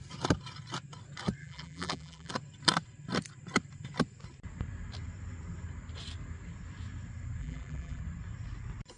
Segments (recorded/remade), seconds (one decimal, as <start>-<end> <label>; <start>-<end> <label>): 0.0-1.4 recorded; 1.4-2.3 remade; 2.3-7.4 recorded; 7.4-8.0 remade; 8.0-9.0 recorded